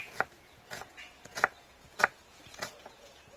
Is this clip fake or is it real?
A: fake